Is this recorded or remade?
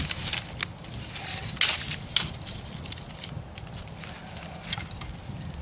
recorded